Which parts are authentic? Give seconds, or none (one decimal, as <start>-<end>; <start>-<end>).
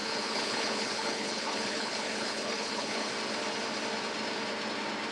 3.1-5.1